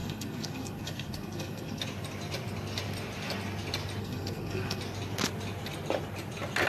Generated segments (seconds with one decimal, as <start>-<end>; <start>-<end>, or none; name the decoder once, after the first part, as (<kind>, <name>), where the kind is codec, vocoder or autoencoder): 0.0-1.8 (codec, SNAC); 4.0-4.8

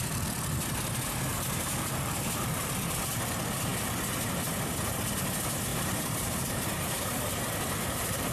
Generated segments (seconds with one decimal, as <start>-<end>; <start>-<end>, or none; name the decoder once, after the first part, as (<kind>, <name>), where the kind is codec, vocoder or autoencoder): 1.3-2.7 (vocoder, BigVGAN v2); 5.7-7.4

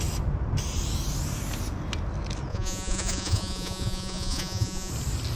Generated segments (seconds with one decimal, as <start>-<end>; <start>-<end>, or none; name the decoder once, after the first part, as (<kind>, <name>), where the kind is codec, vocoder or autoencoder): 2.5-4.9 (vocoder, Vocos)

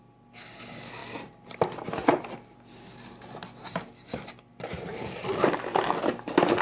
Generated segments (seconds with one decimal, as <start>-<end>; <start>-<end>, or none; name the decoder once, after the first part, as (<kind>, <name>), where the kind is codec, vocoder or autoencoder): 1.0-2.2 (vocoder, BigVGAN v2); 4.5-5.4